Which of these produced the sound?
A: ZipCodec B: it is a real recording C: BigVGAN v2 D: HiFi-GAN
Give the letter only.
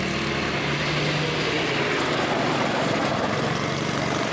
B